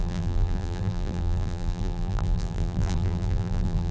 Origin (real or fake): fake